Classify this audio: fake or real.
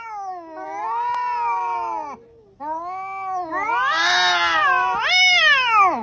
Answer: real